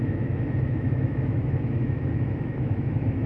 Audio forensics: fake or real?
fake